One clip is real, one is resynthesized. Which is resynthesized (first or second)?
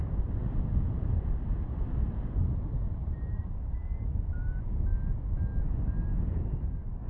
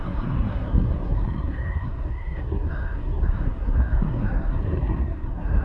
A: second